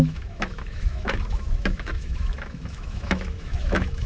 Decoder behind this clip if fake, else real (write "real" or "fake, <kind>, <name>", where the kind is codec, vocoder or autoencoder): fake, autoencoder, DAC-VAE